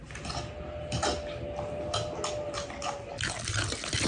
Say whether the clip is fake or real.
real